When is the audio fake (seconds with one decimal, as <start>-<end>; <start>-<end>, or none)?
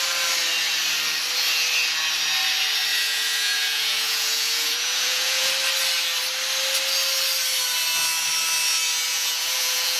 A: 2.9-5.5; 9.1-10.0